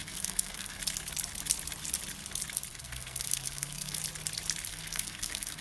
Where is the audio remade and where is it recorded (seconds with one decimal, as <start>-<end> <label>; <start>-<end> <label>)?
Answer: 0.0-0.8 remade; 0.8-2.7 recorded; 2.7-4.0 remade; 4.0-4.7 recorded; 4.7-5.6 remade